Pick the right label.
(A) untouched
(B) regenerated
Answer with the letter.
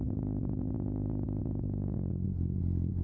A